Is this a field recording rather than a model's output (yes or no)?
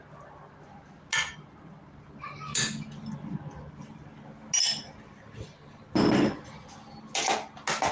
yes